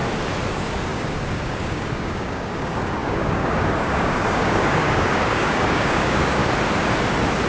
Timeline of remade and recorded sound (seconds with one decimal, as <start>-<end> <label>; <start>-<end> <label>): 0.0-0.5 recorded; 0.5-6.4 remade; 6.4-7.5 recorded